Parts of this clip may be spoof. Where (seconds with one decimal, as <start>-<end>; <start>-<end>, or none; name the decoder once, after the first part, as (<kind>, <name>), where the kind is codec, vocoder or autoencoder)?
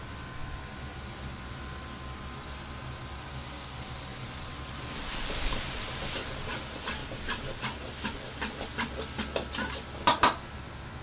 4.1-6.6 (vocoder, BigVGAN v2); 7.0-7.6